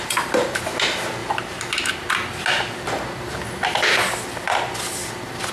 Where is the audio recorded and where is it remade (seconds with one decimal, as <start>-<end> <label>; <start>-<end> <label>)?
0.0-1.2 recorded; 1.2-1.9 remade; 1.9-5.5 recorded